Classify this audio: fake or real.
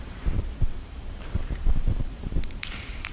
fake